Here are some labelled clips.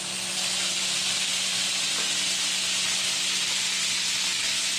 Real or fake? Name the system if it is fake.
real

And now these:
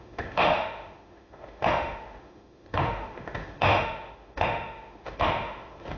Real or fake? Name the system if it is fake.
fake, autoencoder, DAC-VAE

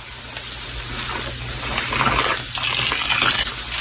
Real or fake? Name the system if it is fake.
real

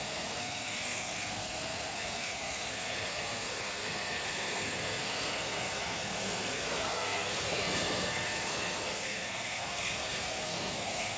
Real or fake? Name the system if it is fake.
fake, codec, SNAC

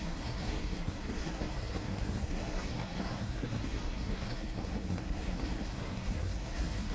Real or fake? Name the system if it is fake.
fake, codec, SNAC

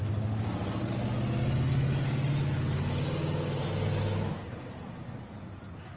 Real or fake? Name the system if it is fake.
real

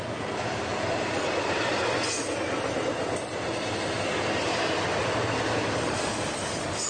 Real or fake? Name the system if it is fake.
real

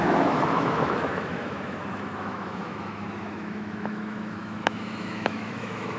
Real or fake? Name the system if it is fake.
fake, autoencoder, DAC-VAE